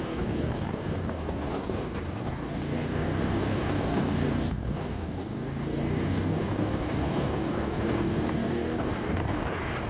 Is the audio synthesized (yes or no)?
yes